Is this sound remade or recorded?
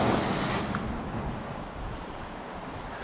recorded